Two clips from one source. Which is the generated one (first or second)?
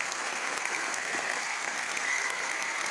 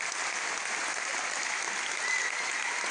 first